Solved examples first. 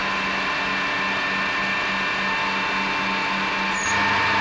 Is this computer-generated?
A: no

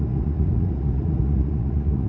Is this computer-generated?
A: yes